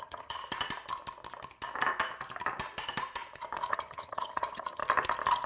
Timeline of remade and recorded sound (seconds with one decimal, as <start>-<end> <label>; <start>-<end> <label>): 0.0-0.4 remade; 0.4-3.7 recorded; 3.7-4.8 remade; 4.8-5.5 recorded

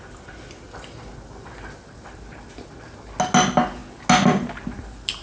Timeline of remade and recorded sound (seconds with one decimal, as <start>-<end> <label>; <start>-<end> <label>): 0.0-5.2 recorded

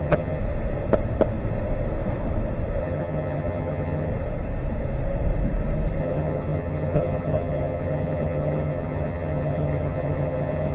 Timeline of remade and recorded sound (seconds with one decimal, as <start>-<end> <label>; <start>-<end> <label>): 0.0-0.4 remade; 0.4-2.8 recorded; 2.8-4.1 remade; 4.1-6.0 recorded; 6.0-10.7 remade

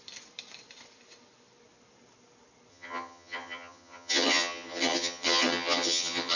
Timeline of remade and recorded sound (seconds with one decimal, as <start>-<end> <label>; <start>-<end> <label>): 0.0-2.7 recorded; 2.7-6.4 remade

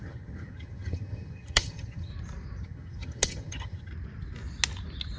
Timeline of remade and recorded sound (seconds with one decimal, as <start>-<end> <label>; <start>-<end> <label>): 0.0-2.1 remade; 2.1-2.6 recorded; 2.6-3.9 remade; 3.9-5.2 recorded

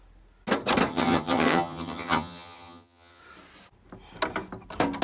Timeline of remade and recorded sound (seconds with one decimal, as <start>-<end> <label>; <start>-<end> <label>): 0.0-0.9 recorded; 0.9-3.2 remade; 3.2-5.0 recorded

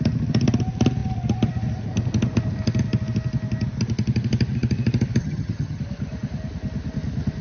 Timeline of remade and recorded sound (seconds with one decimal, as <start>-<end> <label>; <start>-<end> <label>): 0.0-5.2 recorded; 5.2-5.8 remade; 5.8-7.4 recorded

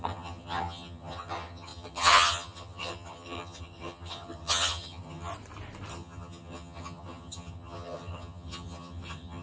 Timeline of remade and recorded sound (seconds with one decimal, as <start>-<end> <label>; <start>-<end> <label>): 0.0-5.3 remade; 5.3-5.9 recorded; 5.9-9.4 remade